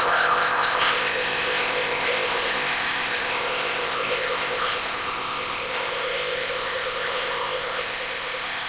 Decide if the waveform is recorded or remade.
remade